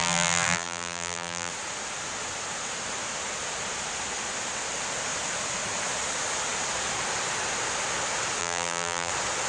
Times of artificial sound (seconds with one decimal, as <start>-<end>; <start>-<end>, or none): 0.0-1.5; 8.4-9.1